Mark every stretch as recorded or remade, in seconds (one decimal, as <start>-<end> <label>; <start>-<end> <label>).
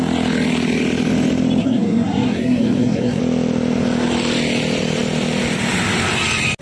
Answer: 0.0-1.6 recorded; 1.6-3.2 remade; 3.2-6.6 recorded